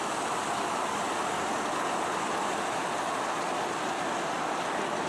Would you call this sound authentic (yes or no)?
yes